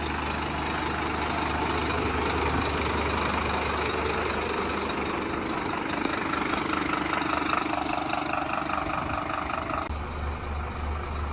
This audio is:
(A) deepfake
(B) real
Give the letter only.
B